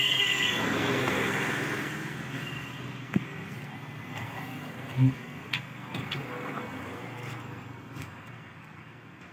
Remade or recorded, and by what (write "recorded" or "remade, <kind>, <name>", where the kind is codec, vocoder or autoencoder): remade, codec, SNAC